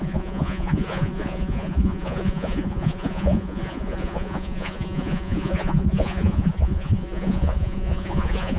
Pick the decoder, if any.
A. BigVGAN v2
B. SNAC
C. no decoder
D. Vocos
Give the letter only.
D